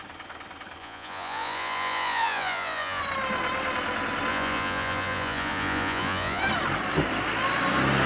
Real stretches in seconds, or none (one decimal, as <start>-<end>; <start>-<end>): 0.0-0.8; 3.0-4.3; 6.4-8.1